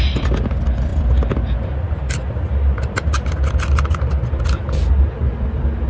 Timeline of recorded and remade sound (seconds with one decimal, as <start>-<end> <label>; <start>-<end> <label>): 0.0-5.9 recorded